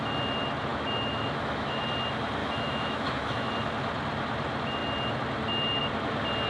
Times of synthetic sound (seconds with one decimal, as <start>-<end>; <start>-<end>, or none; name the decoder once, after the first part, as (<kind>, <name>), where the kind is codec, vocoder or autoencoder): 0.7-1.8 (autoencoder, DAC-VAE); 2.4-3.5